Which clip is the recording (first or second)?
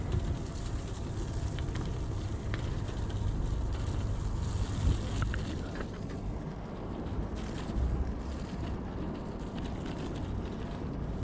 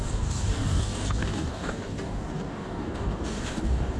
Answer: first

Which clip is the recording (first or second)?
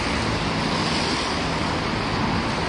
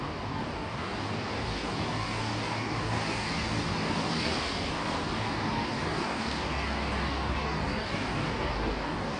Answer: first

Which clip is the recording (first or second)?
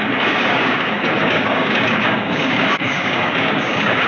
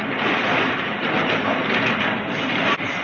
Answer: second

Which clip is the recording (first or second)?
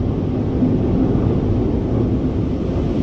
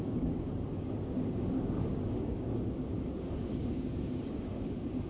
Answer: first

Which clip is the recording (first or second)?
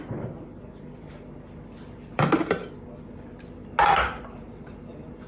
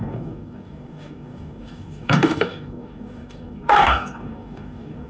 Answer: first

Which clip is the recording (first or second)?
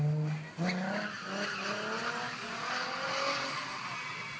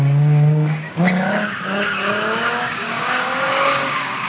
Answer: first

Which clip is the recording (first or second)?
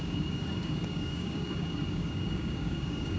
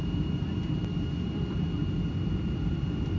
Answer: second